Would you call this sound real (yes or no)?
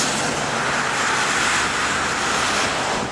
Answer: yes